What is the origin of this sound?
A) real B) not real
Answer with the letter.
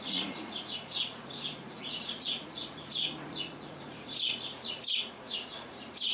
B